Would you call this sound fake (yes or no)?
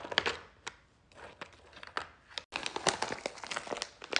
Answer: no